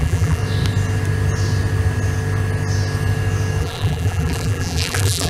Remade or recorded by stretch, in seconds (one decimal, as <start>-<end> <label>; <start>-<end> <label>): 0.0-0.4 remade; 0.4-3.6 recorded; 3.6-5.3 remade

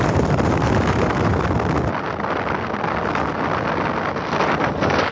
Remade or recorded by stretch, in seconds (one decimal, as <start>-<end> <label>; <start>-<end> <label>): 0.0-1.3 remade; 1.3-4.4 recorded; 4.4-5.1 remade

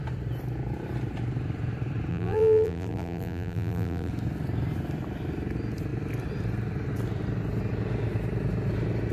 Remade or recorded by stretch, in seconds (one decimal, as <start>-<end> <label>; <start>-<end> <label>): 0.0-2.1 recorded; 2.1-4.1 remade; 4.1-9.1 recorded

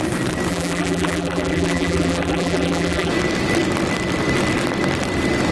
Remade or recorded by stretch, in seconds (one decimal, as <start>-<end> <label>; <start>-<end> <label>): 0.0-0.5 recorded; 0.5-3.1 remade; 3.1-5.5 recorded

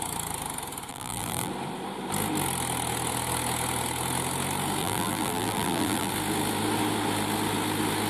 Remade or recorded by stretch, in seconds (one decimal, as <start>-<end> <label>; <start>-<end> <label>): 0.0-0.9 recorded; 0.9-1.5 remade; 1.5-4.8 recorded; 4.8-6.1 remade; 6.1-8.1 recorded

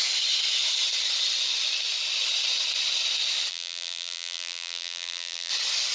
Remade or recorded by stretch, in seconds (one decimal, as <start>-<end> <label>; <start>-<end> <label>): 0.0-3.5 recorded; 3.5-5.5 remade; 5.5-5.9 recorded